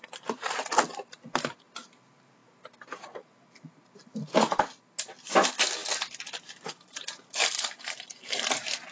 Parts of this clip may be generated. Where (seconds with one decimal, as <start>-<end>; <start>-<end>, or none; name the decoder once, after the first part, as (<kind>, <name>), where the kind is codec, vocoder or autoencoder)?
none